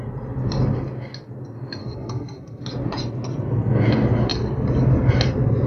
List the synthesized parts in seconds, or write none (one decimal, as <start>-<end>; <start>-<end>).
1.8-2.6